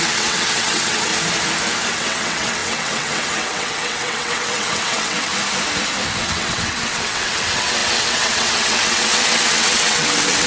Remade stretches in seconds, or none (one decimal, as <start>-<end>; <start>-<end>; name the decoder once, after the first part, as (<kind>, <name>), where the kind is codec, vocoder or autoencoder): 0.0-1.1 (vocoder, WaveNeXt); 1.9-5.3; 6.2-10.5